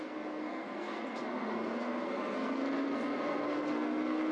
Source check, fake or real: fake